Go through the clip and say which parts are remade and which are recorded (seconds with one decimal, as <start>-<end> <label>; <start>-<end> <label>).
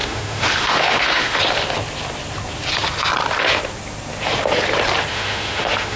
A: 0.0-1.4 remade; 1.4-5.1 recorded; 5.1-6.0 remade